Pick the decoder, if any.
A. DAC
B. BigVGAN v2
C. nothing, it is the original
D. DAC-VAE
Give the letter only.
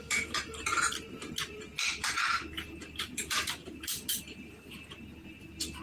B